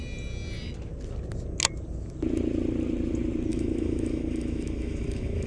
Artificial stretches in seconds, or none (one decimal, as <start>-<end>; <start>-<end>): 3.5-5.5